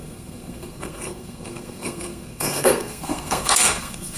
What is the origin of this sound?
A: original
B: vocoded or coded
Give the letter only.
B